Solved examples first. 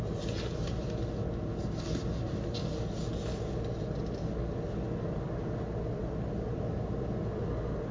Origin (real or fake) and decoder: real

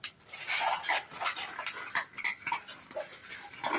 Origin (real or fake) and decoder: real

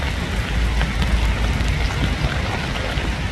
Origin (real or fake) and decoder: real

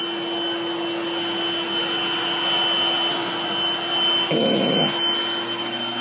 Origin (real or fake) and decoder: real